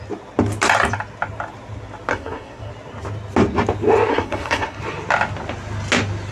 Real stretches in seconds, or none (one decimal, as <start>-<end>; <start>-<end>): 0.0-2.1; 2.7-4.1; 4.8-6.3